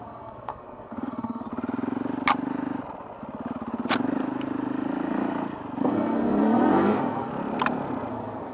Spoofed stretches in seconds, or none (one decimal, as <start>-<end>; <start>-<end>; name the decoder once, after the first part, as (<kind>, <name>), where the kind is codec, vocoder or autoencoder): 0.0-1.5 (codec, SNAC); 5.8-7.3; 8.1-8.5